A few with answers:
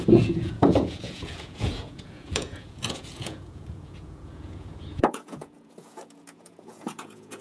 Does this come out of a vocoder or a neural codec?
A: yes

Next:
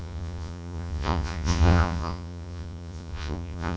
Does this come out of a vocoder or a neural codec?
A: yes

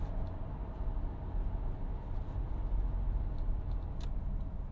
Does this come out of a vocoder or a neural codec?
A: no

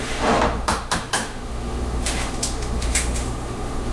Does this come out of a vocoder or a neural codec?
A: yes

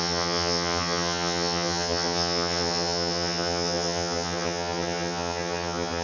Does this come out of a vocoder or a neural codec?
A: yes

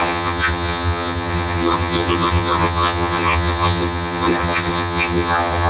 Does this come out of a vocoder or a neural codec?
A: yes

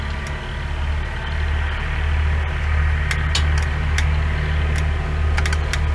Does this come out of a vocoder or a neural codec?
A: no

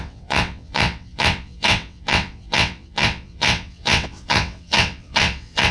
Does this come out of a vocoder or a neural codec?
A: yes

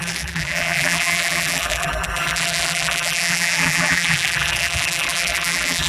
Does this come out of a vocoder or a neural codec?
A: yes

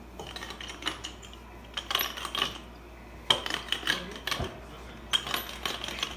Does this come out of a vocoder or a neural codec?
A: no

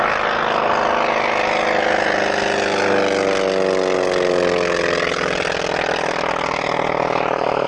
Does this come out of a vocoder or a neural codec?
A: no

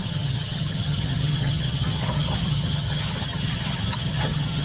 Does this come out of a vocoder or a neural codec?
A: yes